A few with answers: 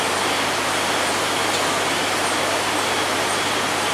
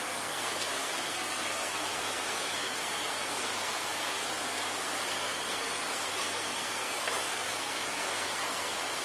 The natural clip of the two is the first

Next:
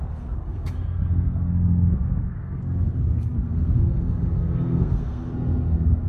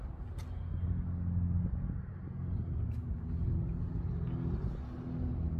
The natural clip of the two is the second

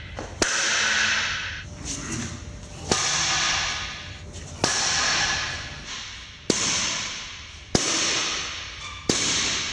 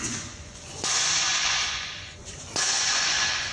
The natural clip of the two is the first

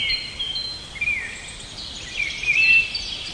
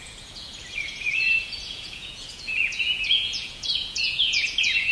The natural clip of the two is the first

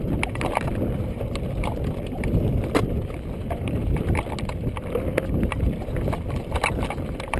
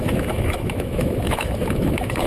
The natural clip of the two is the first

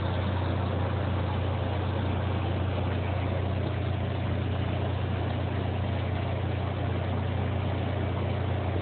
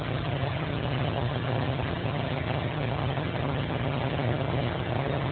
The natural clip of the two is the first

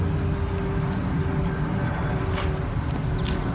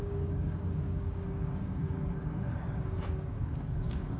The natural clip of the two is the first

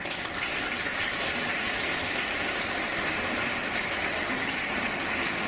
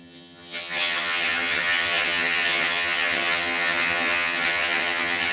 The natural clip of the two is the first